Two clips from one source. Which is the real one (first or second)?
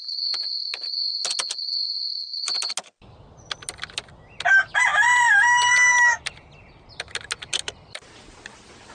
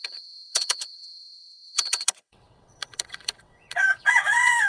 first